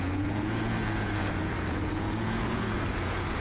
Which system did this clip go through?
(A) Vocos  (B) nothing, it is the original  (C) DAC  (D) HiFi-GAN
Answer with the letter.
A